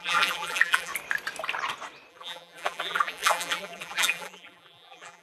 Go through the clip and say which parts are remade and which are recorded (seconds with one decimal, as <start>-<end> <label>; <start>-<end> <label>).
0.0-0.9 remade; 0.9-2.1 recorded; 2.1-5.2 remade